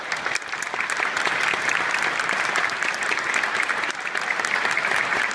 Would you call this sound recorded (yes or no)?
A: yes